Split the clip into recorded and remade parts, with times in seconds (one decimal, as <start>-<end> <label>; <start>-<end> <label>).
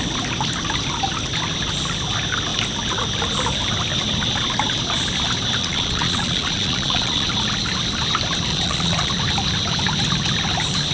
0.0-5.6 recorded; 5.6-7.3 remade; 7.3-8.5 recorded; 8.5-9.1 remade; 9.1-10.9 recorded